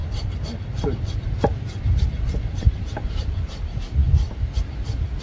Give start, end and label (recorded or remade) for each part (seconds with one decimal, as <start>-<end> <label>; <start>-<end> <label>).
0.0-5.2 recorded

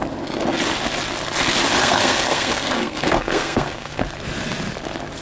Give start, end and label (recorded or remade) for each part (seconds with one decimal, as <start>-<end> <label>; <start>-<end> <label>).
0.0-1.8 recorded; 1.8-4.0 remade; 4.0-5.2 recorded

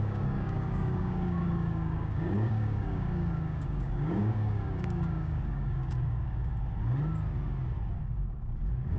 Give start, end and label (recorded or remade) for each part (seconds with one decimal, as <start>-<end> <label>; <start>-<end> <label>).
0.0-6.5 remade; 6.5-7.9 recorded; 7.9-9.0 remade

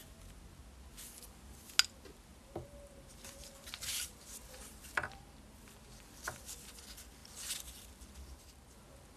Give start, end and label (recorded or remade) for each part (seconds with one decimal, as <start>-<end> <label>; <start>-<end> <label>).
0.0-2.3 recorded; 2.3-5.6 remade; 5.6-7.2 recorded; 7.2-8.4 remade; 8.4-9.2 recorded

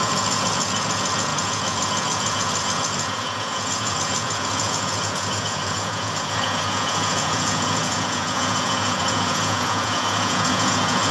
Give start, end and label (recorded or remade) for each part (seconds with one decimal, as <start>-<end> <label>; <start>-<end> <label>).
0.0-11.1 remade

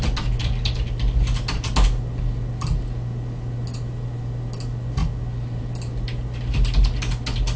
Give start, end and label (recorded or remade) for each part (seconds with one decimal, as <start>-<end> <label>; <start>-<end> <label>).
0.0-7.6 recorded